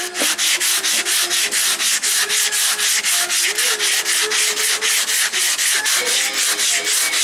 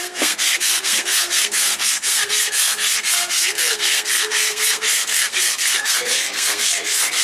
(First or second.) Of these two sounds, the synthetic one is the second